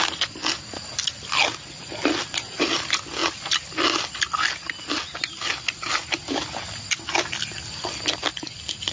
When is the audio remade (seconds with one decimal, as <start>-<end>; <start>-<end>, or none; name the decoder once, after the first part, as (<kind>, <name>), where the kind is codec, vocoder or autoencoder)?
none